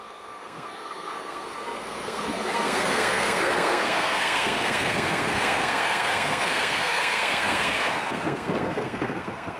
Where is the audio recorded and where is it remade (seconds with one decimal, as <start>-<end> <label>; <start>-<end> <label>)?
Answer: 0.0-9.6 remade